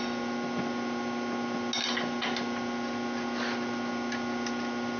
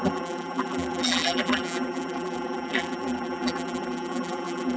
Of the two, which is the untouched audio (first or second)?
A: first